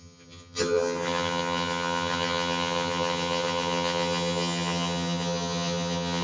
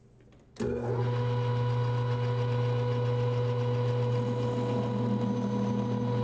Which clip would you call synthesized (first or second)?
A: first